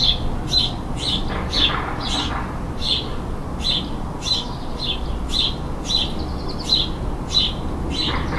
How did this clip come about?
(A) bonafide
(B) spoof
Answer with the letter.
A